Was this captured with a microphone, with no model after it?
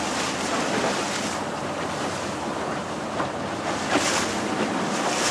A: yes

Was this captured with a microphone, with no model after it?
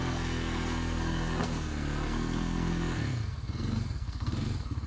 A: no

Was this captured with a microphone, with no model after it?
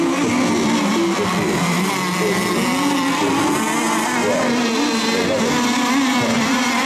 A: yes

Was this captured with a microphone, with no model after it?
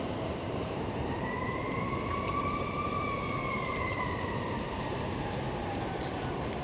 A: no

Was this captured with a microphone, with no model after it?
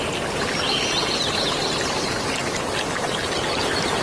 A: yes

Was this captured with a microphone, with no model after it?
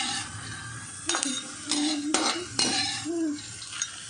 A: no